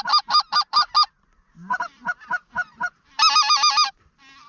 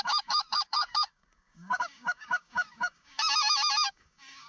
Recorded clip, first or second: first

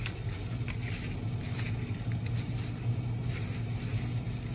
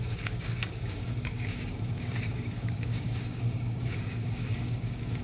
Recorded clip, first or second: first